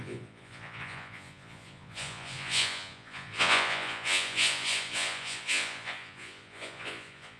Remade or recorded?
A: remade